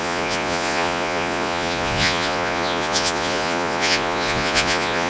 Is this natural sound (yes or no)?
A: no